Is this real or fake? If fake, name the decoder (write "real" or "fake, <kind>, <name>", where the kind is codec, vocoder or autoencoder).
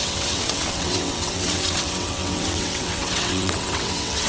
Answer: fake, vocoder, WaveNeXt